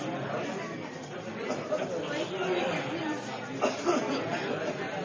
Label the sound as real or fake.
real